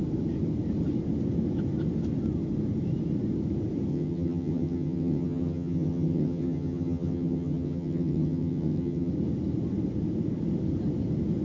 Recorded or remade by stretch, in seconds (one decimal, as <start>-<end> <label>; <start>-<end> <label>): 0.0-3.9 recorded; 3.9-9.1 remade; 9.1-11.4 recorded